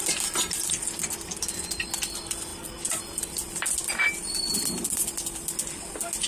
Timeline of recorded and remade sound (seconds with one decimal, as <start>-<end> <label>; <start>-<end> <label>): 0.0-6.3 recorded